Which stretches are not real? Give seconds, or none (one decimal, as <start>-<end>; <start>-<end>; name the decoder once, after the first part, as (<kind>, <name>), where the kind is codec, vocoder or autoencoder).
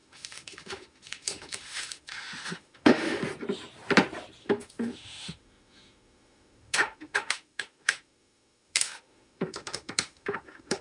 0.0-3.2 (autoencoder, DAC-VAE); 4.4-10.8